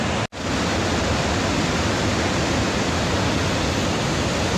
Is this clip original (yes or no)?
yes